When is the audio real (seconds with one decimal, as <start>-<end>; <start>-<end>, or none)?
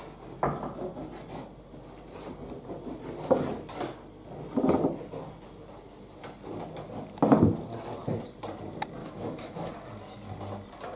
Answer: 0.0-9.0; 9.7-11.0